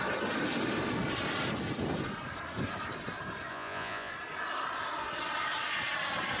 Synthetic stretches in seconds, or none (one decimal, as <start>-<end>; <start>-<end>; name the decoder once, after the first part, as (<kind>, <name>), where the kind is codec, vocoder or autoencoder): 3.5-4.1 (vocoder, Vocos)